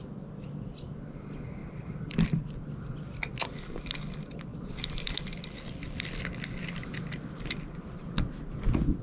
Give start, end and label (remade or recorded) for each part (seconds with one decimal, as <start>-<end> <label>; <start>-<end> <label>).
0.0-1.6 recorded; 1.6-2.4 remade; 2.4-4.5 recorded; 4.5-6.7 remade; 6.7-9.0 recorded